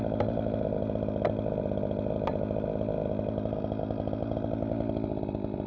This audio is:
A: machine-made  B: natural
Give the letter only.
B